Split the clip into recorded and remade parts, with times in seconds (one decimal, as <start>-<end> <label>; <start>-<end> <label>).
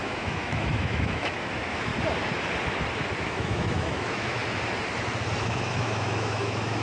0.0-1.9 remade; 1.9-3.2 recorded; 3.2-4.4 remade; 4.4-5.4 recorded; 5.4-6.8 remade